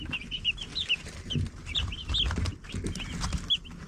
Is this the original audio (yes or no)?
yes